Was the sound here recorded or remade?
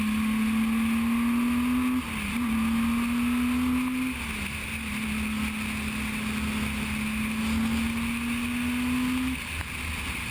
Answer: recorded